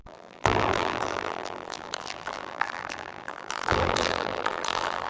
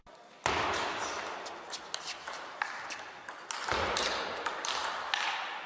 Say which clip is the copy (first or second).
first